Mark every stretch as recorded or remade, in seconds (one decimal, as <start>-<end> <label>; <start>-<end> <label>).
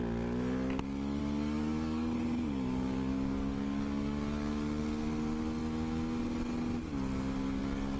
0.0-1.2 recorded; 1.2-4.8 remade; 4.8-8.0 recorded